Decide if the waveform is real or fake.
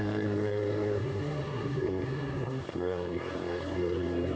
fake